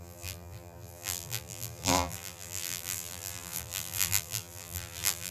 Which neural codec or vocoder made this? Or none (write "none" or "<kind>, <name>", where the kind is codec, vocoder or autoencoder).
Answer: vocoder, BigVGAN v2